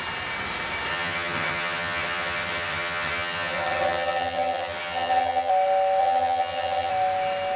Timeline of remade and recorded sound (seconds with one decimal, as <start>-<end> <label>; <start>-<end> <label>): 0.0-0.9 recorded; 0.9-5.5 remade; 5.5-6.0 recorded; 6.0-6.9 remade; 6.9-7.6 recorded